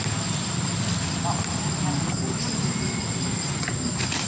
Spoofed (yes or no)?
no